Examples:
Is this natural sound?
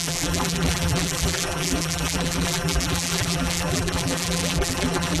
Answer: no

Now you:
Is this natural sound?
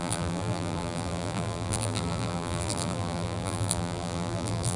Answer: no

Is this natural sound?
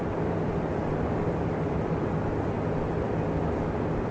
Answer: yes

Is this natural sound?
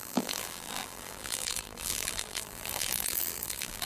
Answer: no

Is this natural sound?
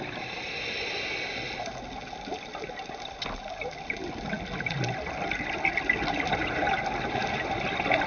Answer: yes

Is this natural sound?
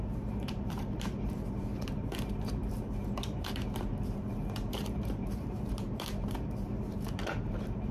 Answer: no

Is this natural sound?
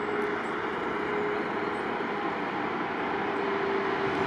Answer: yes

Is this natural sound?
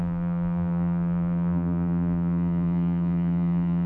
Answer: no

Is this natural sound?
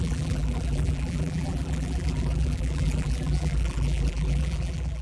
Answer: no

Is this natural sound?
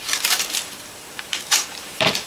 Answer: no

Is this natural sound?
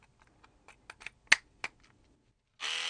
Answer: yes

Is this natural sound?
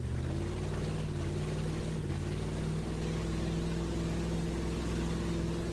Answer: yes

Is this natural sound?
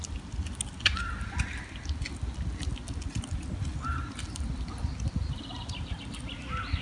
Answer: yes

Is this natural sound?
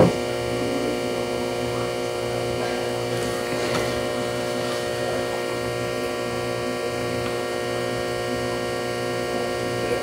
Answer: yes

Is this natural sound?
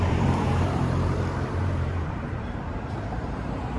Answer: no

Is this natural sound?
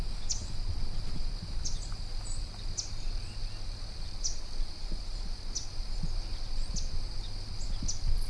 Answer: yes